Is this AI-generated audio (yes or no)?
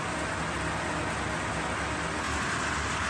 no